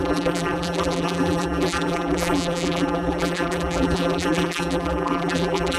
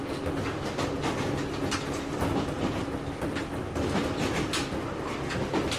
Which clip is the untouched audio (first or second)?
second